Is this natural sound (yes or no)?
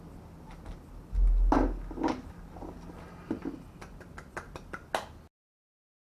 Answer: yes